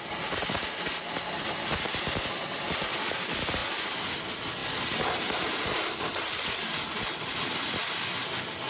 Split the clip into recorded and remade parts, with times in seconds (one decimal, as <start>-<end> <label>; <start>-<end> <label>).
0.0-8.7 recorded